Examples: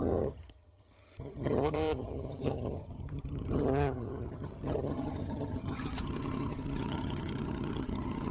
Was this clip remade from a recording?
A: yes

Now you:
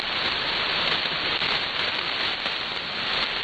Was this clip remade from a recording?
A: yes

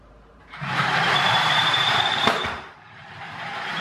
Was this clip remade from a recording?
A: yes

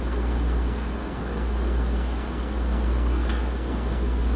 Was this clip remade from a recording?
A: yes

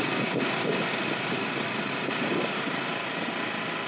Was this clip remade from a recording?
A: no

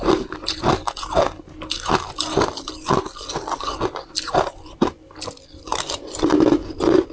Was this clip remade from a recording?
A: no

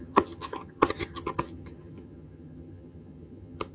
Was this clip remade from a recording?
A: yes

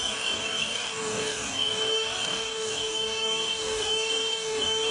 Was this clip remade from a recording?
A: yes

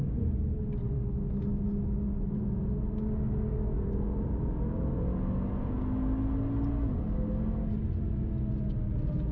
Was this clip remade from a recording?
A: no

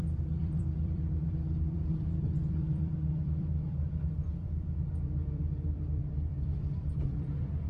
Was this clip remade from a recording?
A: yes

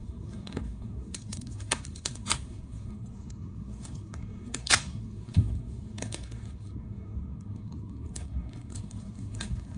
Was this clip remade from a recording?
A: yes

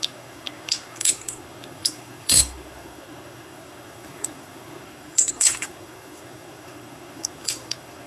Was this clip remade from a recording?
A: yes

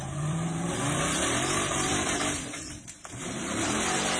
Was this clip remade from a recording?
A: yes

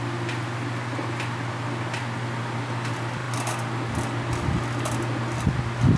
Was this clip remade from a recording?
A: no